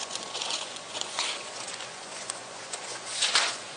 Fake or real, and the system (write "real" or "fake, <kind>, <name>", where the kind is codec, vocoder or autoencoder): fake, vocoder, Vocos